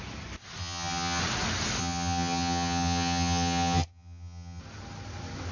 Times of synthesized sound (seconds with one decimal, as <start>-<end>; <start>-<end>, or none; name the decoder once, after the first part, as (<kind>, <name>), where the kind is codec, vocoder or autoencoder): 0.6-1.2 (vocoder, HiFi-GAN); 1.8-4.6